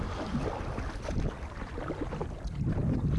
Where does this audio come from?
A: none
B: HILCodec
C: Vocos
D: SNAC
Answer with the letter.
A